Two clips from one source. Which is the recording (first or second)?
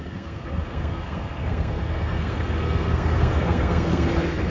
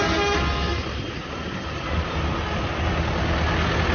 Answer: second